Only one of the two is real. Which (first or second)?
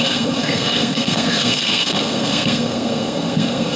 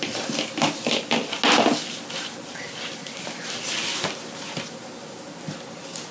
second